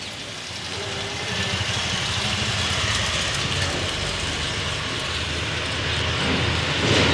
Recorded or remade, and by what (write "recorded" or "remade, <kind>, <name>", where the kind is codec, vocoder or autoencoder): recorded